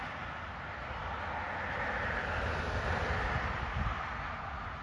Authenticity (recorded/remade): recorded